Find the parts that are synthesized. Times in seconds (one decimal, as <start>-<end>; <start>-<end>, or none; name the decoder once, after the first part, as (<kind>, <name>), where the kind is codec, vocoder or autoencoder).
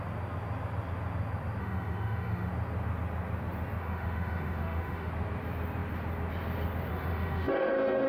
1.6-2.5 (autoencoder, DAC-VAE); 3.8-5.1; 6.9-8.1